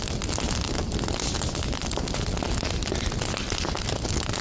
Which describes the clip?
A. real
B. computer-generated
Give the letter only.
A